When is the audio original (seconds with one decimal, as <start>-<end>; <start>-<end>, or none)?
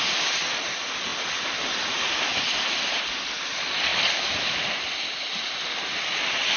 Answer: 0.0-6.6